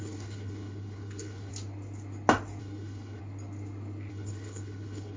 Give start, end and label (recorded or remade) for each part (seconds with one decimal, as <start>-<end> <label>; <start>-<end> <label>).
0.0-1.5 remade; 1.5-2.6 recorded; 2.6-3.2 remade; 3.2-4.1 recorded; 4.1-5.2 remade